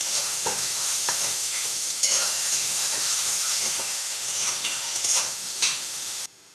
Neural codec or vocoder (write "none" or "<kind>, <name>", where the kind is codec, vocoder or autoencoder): autoencoder, DAC-VAE